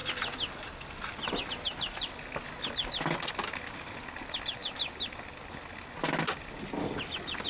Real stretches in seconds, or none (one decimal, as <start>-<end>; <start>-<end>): 0.0-7.5